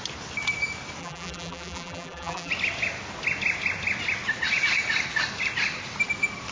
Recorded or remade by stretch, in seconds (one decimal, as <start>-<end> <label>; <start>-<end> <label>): 0.0-1.0 recorded; 1.0-2.5 remade; 2.5-6.5 recorded